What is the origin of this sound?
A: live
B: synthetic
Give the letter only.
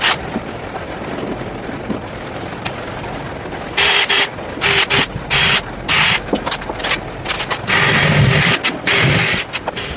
A